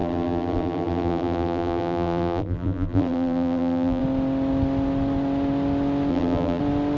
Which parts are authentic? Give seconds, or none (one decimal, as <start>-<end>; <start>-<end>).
4.0-6.1; 6.6-7.0